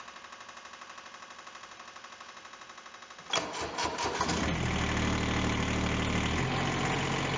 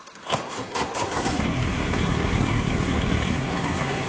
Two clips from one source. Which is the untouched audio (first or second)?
first